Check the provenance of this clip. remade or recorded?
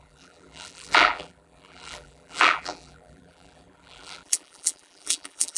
remade